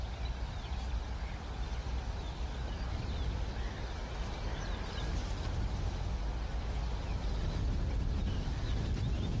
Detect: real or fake real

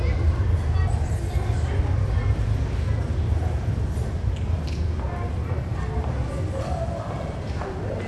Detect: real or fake real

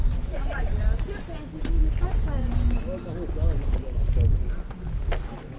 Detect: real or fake real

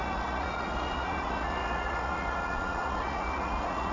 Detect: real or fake fake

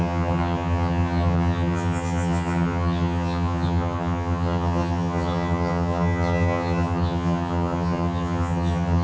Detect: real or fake fake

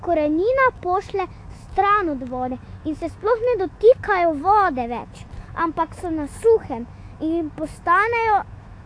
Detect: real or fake fake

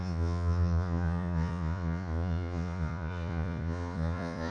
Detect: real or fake fake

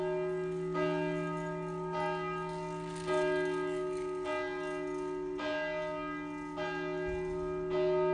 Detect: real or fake real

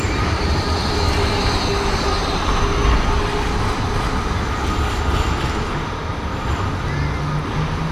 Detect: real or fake real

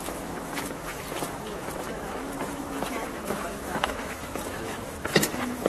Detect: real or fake fake